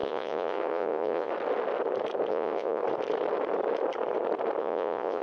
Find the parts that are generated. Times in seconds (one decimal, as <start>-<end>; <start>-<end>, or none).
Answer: 0.0-1.3; 2.3-2.8; 4.6-5.2